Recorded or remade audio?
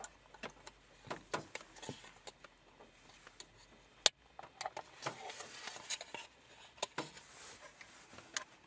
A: recorded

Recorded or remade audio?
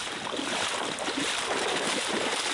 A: remade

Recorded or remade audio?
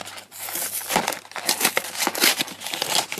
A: recorded